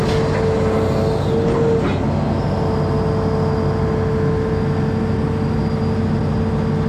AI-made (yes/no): no